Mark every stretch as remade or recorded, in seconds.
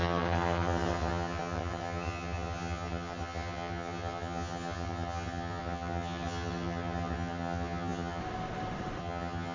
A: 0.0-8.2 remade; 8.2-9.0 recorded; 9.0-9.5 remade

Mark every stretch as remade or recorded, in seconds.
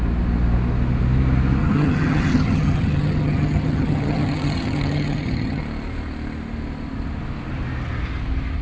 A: 0.0-1.6 recorded; 1.6-5.6 remade; 5.6-8.6 recorded